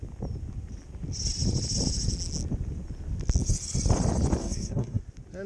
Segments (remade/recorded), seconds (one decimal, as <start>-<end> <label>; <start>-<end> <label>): 0.0-4.4 recorded; 4.4-5.0 remade; 5.0-5.5 recorded